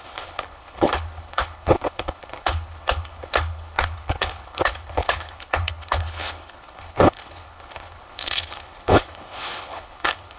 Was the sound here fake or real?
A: fake